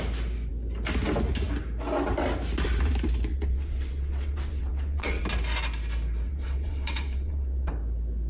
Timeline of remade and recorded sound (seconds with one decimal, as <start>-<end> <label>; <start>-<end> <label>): 0.0-3.3 recorded; 3.3-5.2 remade; 5.2-6.3 recorded; 6.3-7.7 remade; 7.7-8.3 recorded